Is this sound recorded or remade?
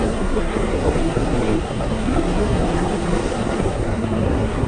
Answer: remade